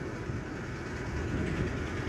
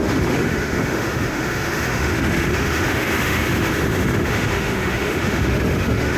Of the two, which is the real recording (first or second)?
first